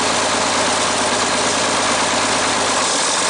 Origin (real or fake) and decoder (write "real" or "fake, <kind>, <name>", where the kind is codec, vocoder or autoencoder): real